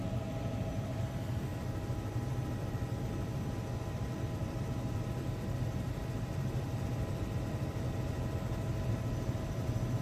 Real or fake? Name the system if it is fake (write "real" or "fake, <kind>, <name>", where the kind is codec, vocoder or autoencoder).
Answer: fake, vocoder, BigVGAN v2